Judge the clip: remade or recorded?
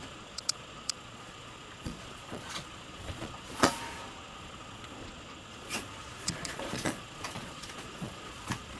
remade